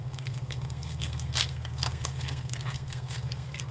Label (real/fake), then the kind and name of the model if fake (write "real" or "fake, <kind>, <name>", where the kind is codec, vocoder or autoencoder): fake, codec, SNAC